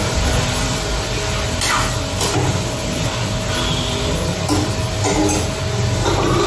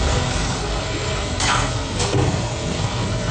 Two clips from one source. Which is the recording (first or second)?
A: first